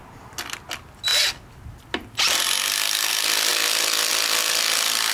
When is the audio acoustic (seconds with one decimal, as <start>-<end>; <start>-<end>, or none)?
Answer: 0.0-5.1